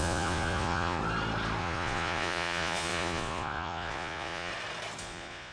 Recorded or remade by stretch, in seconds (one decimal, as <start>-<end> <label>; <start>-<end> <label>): 0.0-1.0 remade; 1.0-1.6 recorded; 1.6-4.5 remade; 4.5-5.0 recorded; 5.0-5.5 remade